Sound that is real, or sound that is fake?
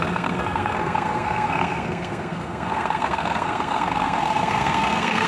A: fake